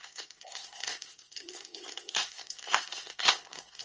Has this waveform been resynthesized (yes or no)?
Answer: yes